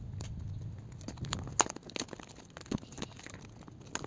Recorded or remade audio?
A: recorded